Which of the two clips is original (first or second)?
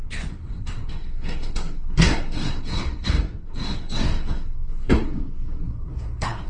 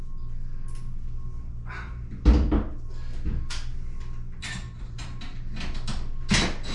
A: second